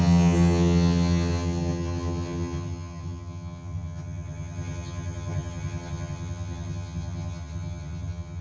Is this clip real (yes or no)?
no